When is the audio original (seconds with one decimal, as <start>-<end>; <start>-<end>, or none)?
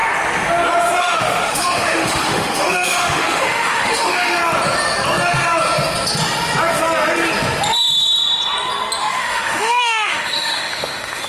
0.0-1.0; 4.4-9.0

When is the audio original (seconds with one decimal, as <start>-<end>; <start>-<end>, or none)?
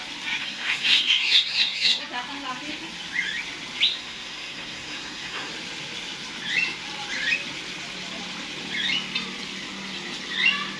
0.0-0.4; 2.0-3.9; 5.5-10.8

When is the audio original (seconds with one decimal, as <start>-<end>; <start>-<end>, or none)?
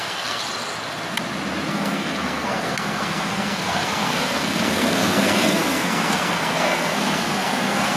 0.4-1.7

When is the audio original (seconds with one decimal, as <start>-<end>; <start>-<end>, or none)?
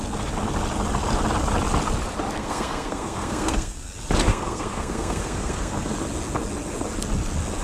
0.0-2.4; 3.9-4.3; 5.9-7.6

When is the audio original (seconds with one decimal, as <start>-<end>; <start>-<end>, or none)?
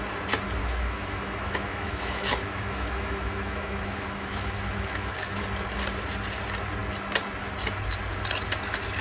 0.0-0.6; 5.4-9.0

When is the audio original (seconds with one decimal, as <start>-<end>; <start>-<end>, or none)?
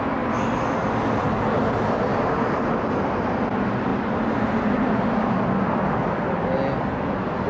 0.0-7.5